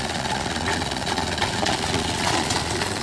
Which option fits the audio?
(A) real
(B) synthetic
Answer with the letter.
B